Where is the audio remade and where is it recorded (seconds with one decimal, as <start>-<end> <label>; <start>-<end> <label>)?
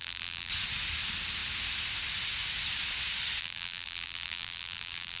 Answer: 0.0-0.5 remade; 0.5-3.4 recorded; 3.4-5.2 remade